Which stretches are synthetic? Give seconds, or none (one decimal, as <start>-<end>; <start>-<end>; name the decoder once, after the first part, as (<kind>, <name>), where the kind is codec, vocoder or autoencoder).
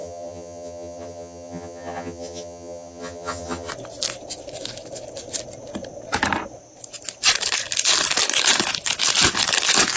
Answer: 0.0-3.7 (vocoder, HiFi-GAN)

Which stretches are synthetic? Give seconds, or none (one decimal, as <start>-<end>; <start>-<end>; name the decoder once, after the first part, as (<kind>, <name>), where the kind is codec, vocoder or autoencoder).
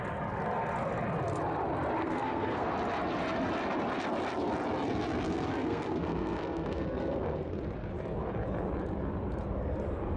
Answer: 2.0-2.7 (codec, SNAC); 5.3-7.5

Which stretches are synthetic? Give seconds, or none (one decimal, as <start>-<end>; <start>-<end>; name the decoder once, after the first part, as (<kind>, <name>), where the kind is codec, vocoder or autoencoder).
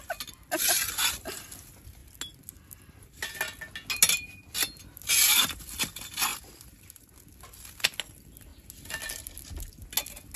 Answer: none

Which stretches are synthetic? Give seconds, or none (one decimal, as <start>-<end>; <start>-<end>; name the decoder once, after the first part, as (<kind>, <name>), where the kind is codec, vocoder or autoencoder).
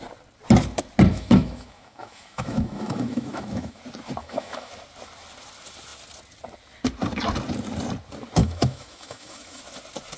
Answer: 1.1-3.8 (autoencoder, DAC-VAE); 4.2-4.7; 8.4-9.6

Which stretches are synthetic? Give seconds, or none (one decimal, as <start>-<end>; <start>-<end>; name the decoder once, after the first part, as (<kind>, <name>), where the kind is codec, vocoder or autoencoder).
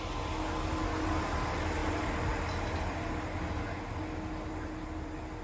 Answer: none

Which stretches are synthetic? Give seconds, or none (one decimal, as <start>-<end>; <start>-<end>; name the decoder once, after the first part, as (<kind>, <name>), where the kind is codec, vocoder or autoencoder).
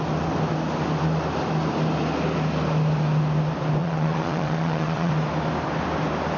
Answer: 3.8-5.1 (vocoder, Vocos)